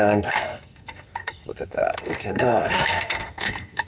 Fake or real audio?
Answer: fake